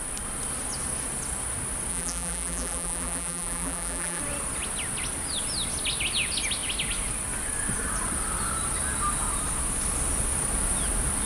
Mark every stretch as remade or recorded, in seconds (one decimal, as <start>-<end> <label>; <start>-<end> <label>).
0.0-1.9 recorded; 1.9-4.2 remade; 4.2-11.3 recorded